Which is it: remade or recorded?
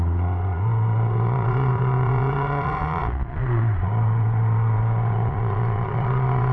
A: remade